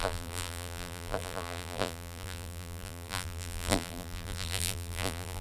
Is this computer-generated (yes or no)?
yes